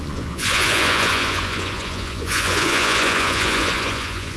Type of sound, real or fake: fake